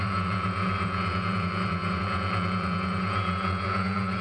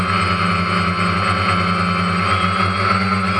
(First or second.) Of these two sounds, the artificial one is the first